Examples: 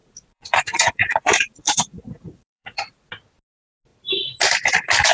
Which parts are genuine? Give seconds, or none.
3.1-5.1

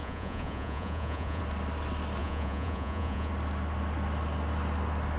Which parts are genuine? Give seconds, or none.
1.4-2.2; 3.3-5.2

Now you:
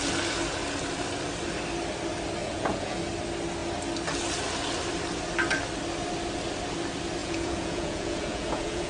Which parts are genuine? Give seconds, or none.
0.0-2.4; 3.0-7.2

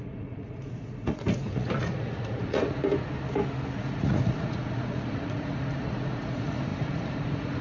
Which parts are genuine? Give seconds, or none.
2.8-3.8

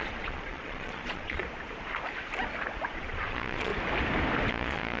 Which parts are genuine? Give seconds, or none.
1.4-2.9; 3.7-4.5

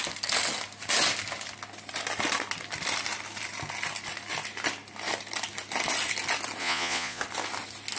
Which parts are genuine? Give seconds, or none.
0.0-6.6; 7.2-8.0